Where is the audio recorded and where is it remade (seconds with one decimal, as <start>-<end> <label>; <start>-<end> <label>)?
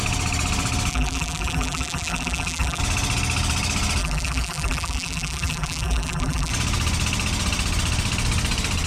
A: 0.0-0.9 recorded; 0.9-2.8 remade; 2.8-4.0 recorded; 4.0-6.5 remade; 6.5-8.9 recorded